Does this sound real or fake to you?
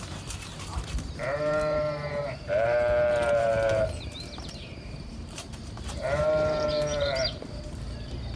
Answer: fake